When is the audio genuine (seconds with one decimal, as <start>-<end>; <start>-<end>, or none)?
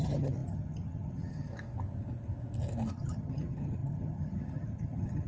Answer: 1.5-2.9